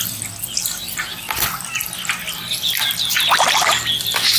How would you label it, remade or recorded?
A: recorded